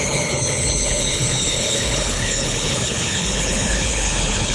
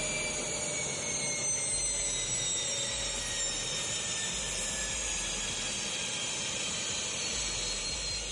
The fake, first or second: first